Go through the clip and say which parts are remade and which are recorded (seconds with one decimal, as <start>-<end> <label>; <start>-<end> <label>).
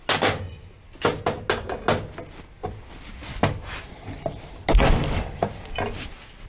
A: 0.0-6.5 recorded